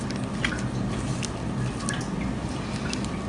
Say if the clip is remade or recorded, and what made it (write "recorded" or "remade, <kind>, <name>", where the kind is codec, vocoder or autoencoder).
recorded